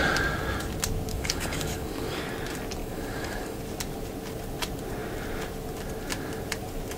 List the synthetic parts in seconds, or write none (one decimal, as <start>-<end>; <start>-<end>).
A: 1.1-2.3; 2.8-3.6